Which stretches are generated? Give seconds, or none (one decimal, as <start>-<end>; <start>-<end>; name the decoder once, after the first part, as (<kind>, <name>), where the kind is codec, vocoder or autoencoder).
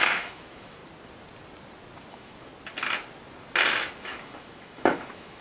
0.0-0.8 (autoencoder, DAC-VAE); 2.1-2.5; 4.0-5.4